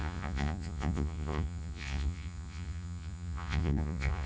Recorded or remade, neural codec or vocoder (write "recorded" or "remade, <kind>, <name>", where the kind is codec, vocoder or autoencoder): remade, vocoder, Vocos